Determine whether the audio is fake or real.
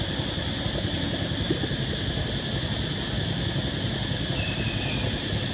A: real